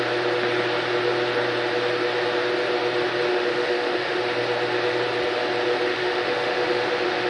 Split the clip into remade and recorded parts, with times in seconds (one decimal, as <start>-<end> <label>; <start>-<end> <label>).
0.0-3.3 recorded; 3.3-4.2 remade; 4.2-5.9 recorded; 5.9-7.3 remade